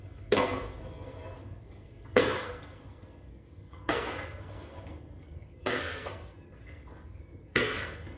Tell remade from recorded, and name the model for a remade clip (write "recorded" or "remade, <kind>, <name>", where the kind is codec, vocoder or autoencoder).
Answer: remade, codec, SNAC